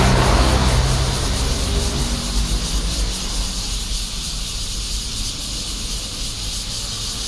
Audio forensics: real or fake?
real